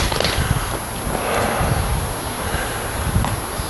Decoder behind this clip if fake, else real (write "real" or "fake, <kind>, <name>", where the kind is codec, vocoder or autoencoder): real